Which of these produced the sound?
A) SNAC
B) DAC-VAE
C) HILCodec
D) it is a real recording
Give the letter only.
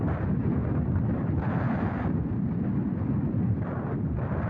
D